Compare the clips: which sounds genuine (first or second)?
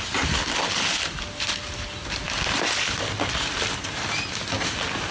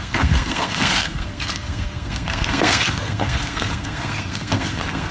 first